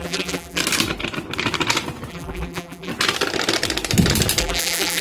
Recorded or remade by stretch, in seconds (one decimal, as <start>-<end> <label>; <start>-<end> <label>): 0.0-0.6 remade; 0.6-2.1 recorded; 2.1-2.9 remade; 2.9-4.4 recorded; 4.4-5.0 remade